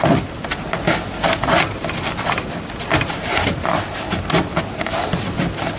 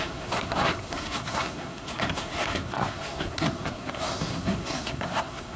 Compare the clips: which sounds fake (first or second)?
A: second